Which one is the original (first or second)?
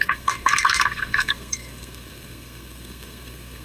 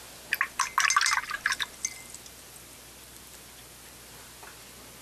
second